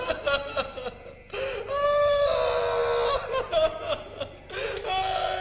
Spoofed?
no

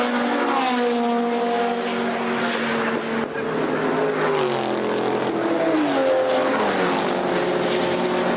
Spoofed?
no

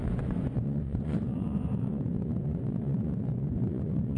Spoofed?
yes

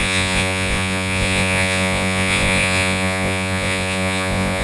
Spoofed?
yes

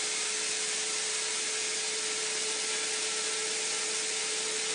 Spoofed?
no